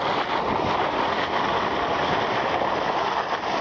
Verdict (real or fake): real